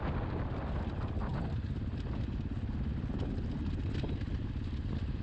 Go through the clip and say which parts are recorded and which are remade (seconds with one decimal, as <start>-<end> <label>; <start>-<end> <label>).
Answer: 0.0-5.2 recorded